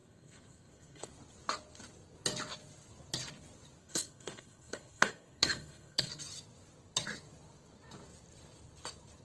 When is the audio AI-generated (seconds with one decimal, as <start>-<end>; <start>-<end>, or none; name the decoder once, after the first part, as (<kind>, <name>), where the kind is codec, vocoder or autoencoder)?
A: 0.0-1.1 (codec, SNAC); 3.8-6.1